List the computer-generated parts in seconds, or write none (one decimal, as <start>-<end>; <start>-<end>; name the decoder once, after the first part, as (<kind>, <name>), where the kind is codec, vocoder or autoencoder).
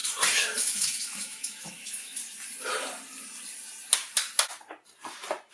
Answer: 0.6-2.2 (autoencoder, DAC-VAE)